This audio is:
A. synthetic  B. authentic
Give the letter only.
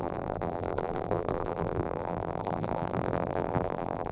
A